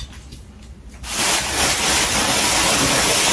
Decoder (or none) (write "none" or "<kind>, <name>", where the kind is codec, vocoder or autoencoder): none